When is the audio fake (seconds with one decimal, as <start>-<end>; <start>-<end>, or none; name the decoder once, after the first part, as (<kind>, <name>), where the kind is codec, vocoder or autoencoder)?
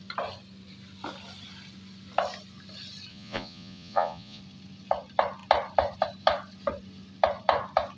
3.1-4.4 (vocoder, Vocos)